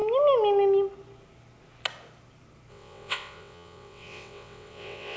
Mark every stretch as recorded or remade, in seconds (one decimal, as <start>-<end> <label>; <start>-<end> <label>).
0.0-2.7 recorded; 2.7-5.2 remade